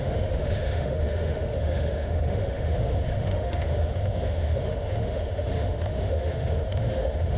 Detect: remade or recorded remade